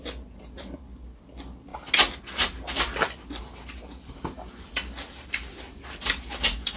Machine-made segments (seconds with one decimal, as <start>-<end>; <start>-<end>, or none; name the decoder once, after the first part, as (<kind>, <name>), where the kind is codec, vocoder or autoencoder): none